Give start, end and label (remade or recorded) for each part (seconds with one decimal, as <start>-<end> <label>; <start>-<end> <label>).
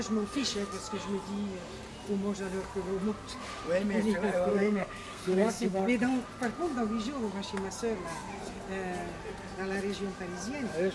0.0-4.5 recorded; 4.5-5.8 remade; 5.8-10.9 recorded